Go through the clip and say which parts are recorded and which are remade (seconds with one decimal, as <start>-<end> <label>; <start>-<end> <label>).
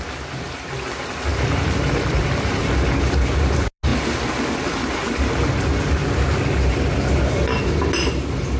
0.0-1.3 recorded; 1.3-2.6 remade; 2.6-8.6 recorded